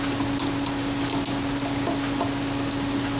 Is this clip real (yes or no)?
yes